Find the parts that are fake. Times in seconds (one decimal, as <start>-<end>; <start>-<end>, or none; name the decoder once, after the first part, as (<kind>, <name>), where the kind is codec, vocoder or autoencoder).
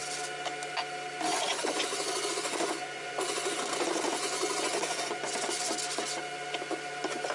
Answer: 1.3-5.7 (vocoder, Vocos)